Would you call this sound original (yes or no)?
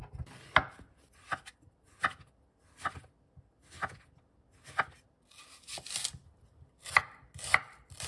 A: yes